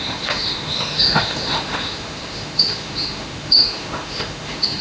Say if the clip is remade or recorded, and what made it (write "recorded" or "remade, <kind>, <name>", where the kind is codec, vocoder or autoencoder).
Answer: remade, autoencoder, DAC-VAE